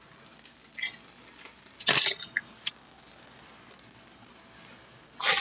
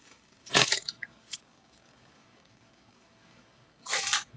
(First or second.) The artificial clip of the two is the second